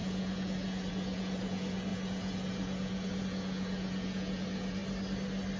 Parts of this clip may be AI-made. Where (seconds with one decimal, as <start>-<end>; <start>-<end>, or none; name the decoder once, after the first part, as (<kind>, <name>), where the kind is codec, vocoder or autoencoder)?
0.0-4.8 (vocoder, Vocos)